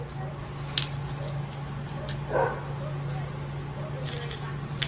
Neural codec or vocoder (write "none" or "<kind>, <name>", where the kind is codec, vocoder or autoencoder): none